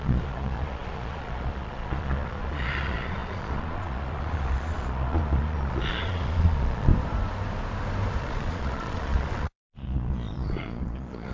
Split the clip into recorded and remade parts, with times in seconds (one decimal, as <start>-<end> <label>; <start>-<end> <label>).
0.0-6.9 remade; 6.9-8.2 recorded; 8.2-11.3 remade